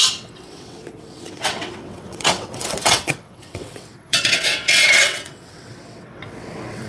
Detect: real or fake fake